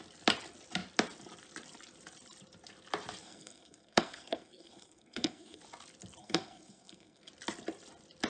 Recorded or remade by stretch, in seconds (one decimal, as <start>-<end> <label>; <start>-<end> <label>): 0.0-3.2 recorded; 3.2-5.6 remade; 5.6-6.2 recorded; 6.2-7.3 remade; 7.3-8.3 recorded